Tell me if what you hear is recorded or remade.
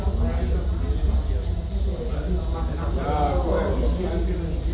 recorded